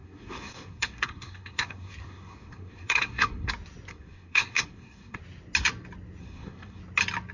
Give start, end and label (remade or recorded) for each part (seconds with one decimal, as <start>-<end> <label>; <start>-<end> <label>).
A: 0.0-3.5 remade; 3.5-3.9 recorded; 3.9-5.2 remade; 5.2-6.2 recorded; 6.2-6.8 remade; 6.8-7.3 recorded